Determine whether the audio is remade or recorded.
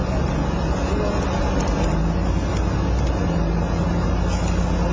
recorded